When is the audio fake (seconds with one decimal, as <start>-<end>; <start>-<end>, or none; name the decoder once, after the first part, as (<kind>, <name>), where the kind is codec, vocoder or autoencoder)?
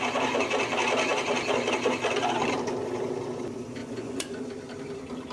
3.8-4.4 (vocoder, Vocos)